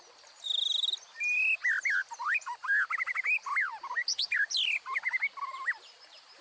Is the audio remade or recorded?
recorded